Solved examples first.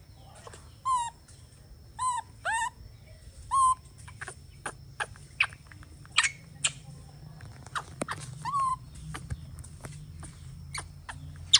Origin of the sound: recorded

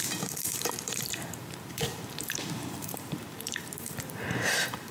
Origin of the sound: remade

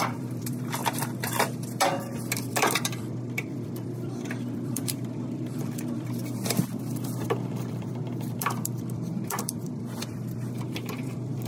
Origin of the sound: remade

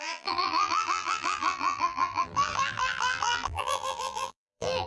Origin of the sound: remade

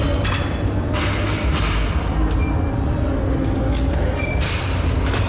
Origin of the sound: recorded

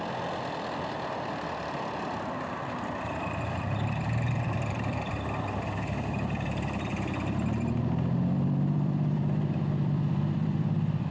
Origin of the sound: remade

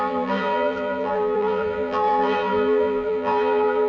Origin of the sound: remade